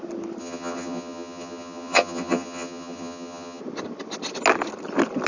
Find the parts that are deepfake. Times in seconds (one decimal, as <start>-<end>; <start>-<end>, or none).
0.4-3.6